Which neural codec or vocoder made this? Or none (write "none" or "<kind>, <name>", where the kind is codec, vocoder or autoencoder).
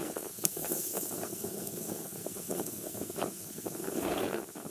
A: codec, SNAC